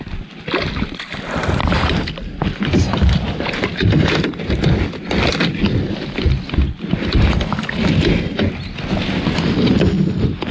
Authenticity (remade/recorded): recorded